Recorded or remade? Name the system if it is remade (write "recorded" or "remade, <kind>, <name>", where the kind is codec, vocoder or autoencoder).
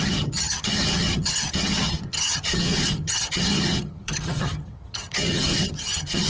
remade, vocoder, HiFi-GAN